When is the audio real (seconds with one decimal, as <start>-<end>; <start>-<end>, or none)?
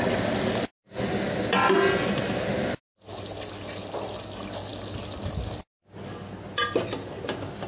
0.0-7.7